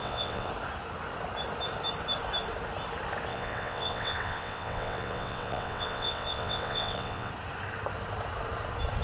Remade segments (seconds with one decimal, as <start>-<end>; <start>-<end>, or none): 0.0-0.5; 3.3-7.3